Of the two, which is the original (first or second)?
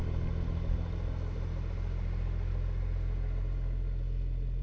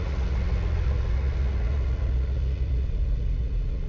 first